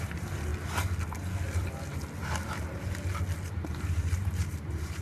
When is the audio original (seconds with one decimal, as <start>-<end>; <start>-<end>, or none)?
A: 0.5-3.5